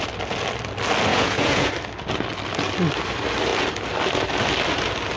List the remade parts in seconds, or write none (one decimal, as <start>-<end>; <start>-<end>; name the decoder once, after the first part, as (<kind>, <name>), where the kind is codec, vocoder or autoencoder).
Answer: 1.1-1.7 (vocoder, Vocos)